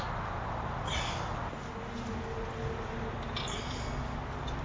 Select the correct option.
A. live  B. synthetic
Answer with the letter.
A